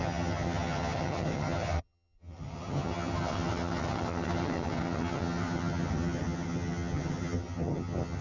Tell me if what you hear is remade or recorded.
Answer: remade